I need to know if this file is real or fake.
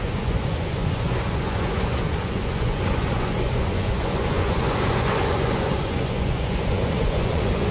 fake